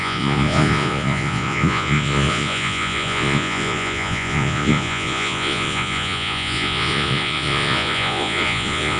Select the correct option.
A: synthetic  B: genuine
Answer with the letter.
A